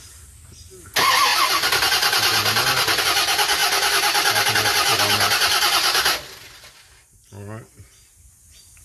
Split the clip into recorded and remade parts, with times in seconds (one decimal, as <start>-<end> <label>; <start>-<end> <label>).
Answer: 0.0-8.8 recorded